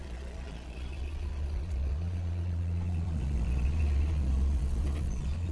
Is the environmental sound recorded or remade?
remade